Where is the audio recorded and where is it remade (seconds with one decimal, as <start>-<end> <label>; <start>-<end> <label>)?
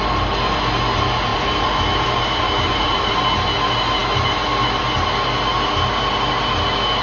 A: 0.0-1.3 recorded; 1.3-3.1 remade; 3.1-7.0 recorded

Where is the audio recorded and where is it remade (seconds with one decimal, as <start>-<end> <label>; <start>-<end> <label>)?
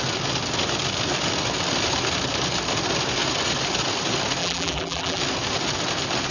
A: 0.0-4.4 recorded; 4.4-5.2 remade; 5.2-6.3 recorded